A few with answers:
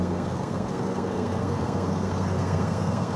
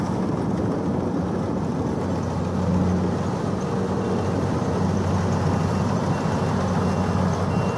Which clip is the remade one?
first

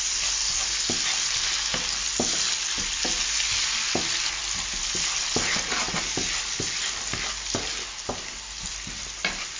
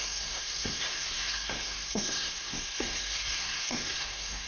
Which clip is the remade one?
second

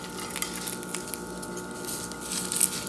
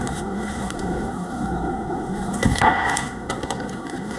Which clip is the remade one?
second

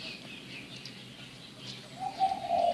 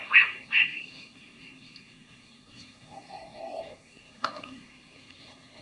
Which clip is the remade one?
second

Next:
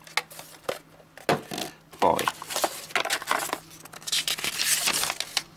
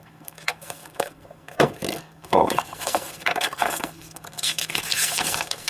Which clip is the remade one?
second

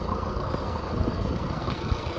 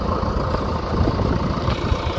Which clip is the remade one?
first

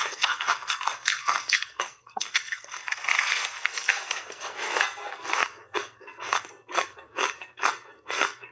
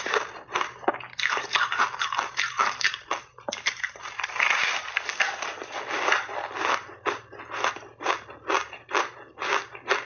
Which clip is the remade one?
first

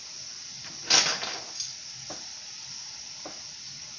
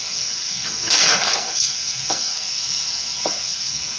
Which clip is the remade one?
second